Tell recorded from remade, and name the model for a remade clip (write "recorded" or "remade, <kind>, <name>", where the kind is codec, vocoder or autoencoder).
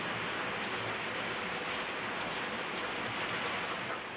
recorded